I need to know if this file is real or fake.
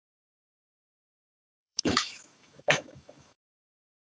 fake